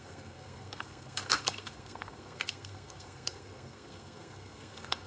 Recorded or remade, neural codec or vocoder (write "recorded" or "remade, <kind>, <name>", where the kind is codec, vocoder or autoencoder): remade, codec, SNAC